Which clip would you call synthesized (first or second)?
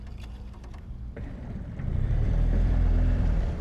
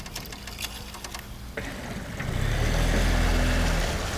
first